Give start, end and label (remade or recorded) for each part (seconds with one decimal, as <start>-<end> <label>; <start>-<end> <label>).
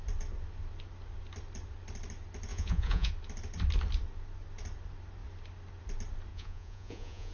0.0-2.5 recorded; 2.5-3.1 remade; 3.1-6.3 recorded; 6.3-7.3 remade